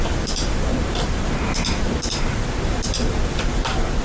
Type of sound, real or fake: fake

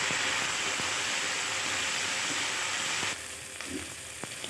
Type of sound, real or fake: real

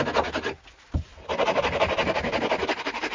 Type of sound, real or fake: real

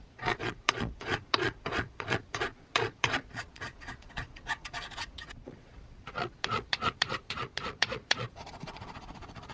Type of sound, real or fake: fake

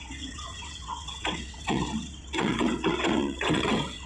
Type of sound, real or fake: fake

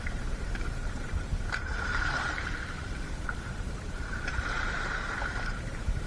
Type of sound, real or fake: fake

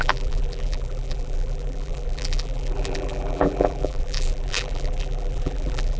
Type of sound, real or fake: fake